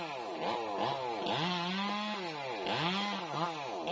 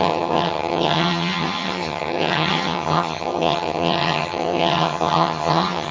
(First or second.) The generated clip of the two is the second